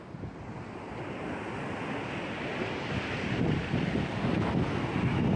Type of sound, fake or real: real